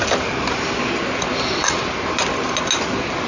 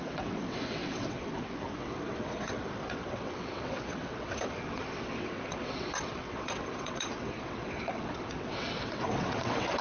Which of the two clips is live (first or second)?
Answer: first